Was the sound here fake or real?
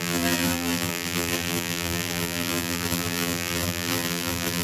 fake